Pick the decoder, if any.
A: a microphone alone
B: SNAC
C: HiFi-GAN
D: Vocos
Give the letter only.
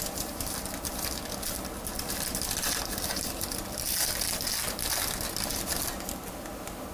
A